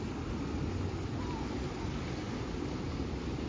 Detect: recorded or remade recorded